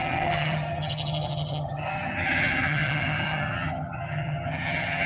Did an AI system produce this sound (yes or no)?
yes